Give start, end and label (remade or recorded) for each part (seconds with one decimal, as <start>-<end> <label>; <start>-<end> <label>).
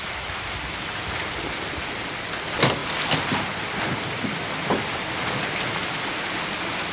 0.0-6.9 recorded